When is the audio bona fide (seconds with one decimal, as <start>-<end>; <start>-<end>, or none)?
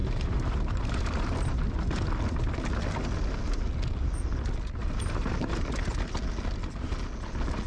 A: 1.5-4.8; 5.5-7.7